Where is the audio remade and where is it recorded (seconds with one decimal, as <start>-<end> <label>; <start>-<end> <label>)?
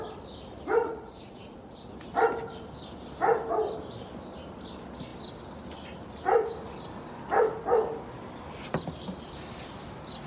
0.0-0.8 recorded; 0.8-1.9 remade; 1.9-10.3 recorded